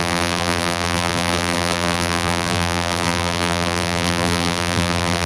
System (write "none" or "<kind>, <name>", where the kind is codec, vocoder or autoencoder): vocoder, BigVGAN v2